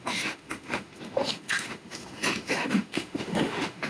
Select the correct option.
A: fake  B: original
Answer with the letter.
A